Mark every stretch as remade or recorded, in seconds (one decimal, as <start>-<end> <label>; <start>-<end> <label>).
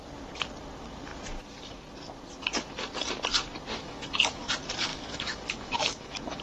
0.0-3.7 recorded; 3.7-4.5 remade; 4.5-4.9 recorded; 4.9-6.4 remade